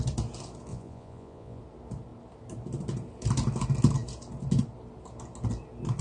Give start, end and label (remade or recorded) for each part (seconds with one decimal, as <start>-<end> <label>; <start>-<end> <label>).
0.0-0.7 recorded; 0.7-1.6 remade; 1.6-6.0 recorded